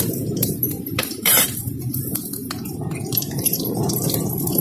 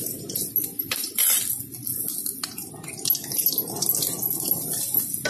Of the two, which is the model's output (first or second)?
first